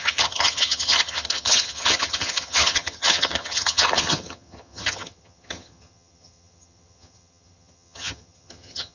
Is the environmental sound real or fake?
fake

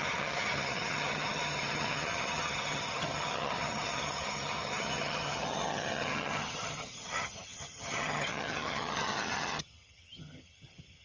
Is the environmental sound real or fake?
fake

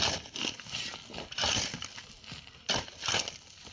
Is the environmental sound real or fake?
real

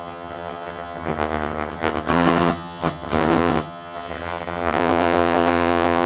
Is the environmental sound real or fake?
fake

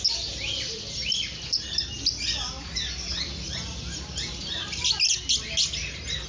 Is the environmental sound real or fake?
real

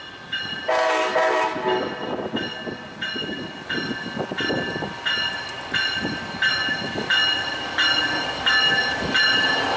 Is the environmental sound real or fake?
real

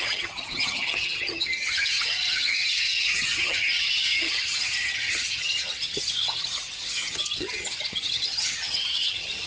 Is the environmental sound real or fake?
fake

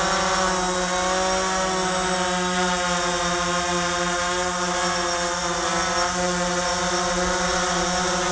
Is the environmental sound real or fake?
real